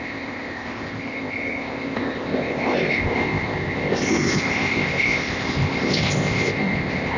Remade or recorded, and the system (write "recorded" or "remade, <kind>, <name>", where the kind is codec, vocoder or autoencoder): remade, codec, ZipCodec